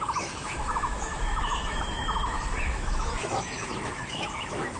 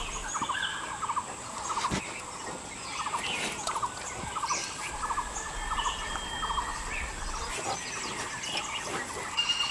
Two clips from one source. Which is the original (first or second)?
second